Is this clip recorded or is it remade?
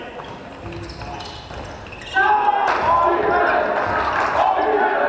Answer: recorded